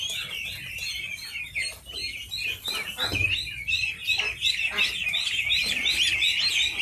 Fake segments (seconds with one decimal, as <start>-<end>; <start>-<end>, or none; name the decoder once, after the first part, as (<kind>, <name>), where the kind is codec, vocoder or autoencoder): none

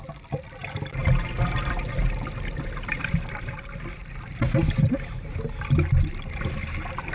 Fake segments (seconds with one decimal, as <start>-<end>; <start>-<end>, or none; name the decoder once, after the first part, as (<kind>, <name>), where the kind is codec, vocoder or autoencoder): none

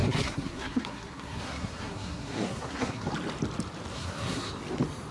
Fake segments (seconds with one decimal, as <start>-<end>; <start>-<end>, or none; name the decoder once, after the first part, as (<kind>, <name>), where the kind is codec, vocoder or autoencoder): 0.0-3.1 (codec, SNAC); 3.9-4.5